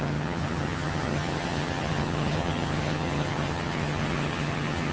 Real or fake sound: fake